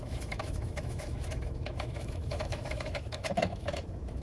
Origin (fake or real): fake